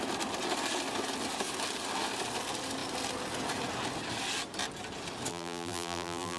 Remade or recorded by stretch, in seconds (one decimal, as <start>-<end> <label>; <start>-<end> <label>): 0.0-5.3 recorded; 5.3-6.4 remade